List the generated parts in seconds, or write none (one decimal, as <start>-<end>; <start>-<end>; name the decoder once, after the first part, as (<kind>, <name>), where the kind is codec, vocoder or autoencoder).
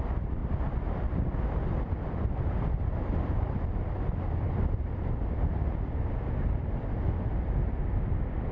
0.4-5.1 (vocoder, BigVGAN v2)